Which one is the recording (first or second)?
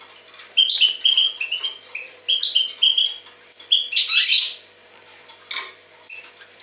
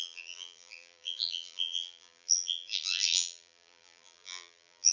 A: first